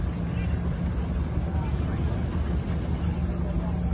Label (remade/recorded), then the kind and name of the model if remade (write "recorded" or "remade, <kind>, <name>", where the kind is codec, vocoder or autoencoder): recorded